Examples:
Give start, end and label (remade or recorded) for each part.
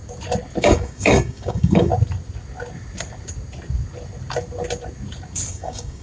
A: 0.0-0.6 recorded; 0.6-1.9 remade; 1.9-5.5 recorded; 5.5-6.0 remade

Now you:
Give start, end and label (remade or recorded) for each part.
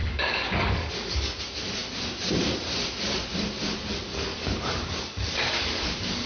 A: 0.0-1.4 remade; 1.4-4.1 recorded; 4.1-6.3 remade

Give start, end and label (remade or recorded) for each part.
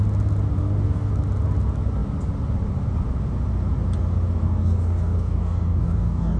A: 0.0-0.6 recorded; 0.6-1.1 remade; 1.1-4.4 recorded; 4.4-6.4 remade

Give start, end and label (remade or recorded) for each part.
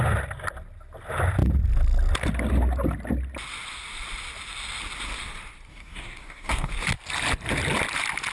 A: 0.0-5.7 recorded; 5.7-6.7 remade; 6.7-8.3 recorded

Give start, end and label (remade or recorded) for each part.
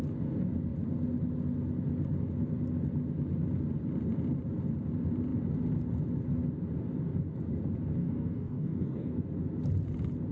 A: 0.0-8.0 recorded; 8.0-9.1 remade; 9.1-10.3 recorded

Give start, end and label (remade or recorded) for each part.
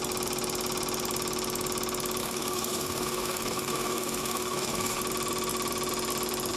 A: 0.0-2.2 recorded; 2.2-5.0 remade; 5.0-6.6 recorded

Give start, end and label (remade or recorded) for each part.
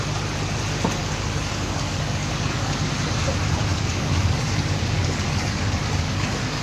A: 0.0-1.0 recorded; 1.0-2.9 remade; 2.9-3.7 recorded; 3.7-6.6 remade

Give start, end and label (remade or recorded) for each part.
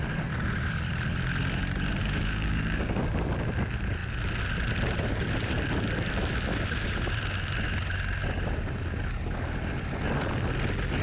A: 0.0-2.0 recorded; 2.0-3.0 remade; 3.0-11.0 recorded